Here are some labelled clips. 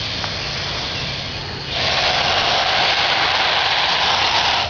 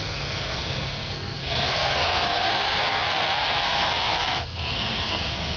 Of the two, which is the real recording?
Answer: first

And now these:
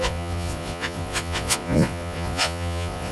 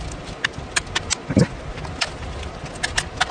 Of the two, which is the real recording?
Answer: second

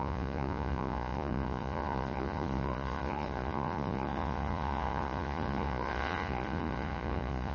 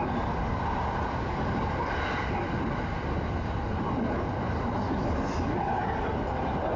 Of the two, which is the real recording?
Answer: second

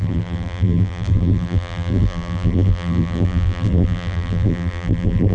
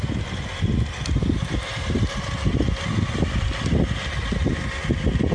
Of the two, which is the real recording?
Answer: second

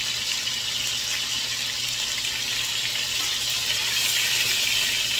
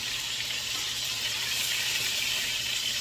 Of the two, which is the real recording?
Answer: first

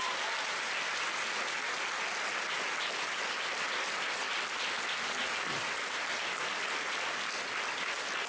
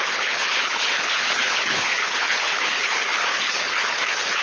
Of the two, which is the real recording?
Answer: first